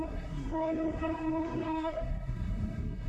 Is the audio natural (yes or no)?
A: no